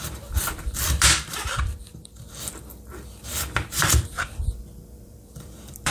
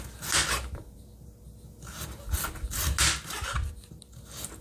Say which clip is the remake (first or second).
first